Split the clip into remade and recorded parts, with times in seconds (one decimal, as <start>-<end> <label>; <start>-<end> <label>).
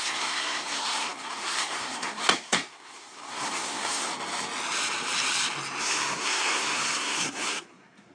0.0-4.1 remade; 4.1-5.8 recorded; 5.8-8.1 remade